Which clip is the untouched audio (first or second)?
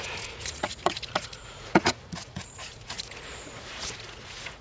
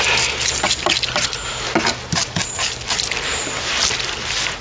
second